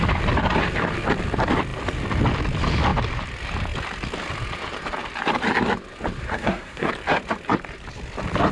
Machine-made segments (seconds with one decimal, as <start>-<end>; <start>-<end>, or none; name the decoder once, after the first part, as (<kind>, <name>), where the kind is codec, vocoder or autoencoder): 6.3-6.9 (codec, SNAC)